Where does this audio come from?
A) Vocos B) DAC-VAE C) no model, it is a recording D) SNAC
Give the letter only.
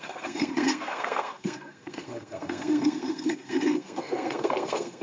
D